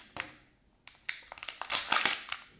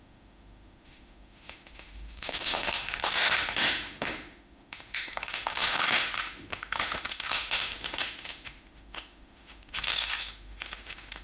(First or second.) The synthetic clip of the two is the second